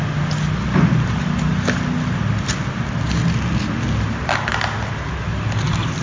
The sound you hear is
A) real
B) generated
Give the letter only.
A